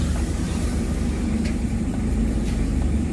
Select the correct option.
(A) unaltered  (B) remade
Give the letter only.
B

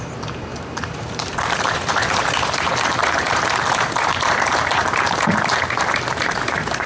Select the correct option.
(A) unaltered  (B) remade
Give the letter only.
B